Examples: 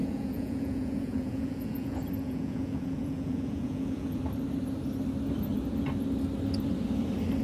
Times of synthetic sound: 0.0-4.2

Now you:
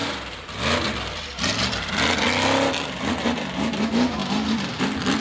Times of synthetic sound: none